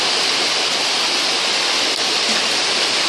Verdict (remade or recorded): recorded